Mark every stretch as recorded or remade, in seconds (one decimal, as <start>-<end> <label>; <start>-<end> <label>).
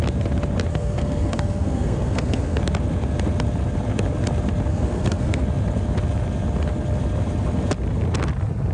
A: 0.0-0.7 recorded; 0.7-2.6 remade; 2.6-4.7 recorded; 4.7-5.4 remade; 5.4-8.7 recorded